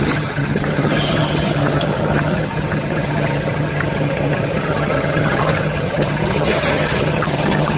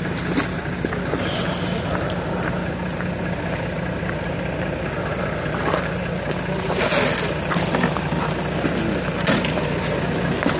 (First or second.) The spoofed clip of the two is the first